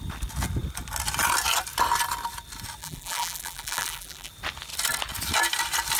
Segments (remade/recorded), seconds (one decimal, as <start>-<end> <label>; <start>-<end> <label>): 0.0-2.8 recorded; 2.8-4.3 remade; 4.3-6.0 recorded